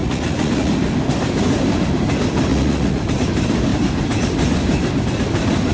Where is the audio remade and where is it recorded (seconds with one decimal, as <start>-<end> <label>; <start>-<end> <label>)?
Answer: 0.0-0.7 remade; 0.7-2.5 recorded; 2.5-3.0 remade; 3.0-5.7 recorded

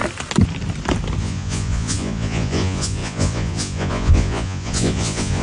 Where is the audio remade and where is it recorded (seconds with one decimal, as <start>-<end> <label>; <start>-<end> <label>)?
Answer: 0.0-1.2 recorded; 1.2-5.4 remade